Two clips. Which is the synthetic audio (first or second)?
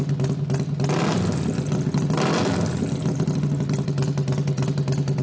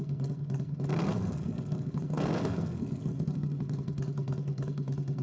second